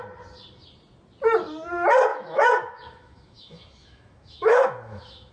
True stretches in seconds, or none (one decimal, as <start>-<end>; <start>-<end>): 0.0-2.1